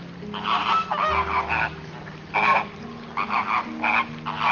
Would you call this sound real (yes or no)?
yes